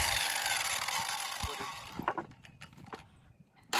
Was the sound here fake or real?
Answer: real